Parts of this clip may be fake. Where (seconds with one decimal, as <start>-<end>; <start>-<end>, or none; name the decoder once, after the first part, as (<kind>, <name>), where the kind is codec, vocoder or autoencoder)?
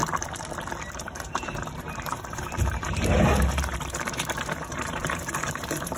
0.9-6.0 (vocoder, BigVGAN v2)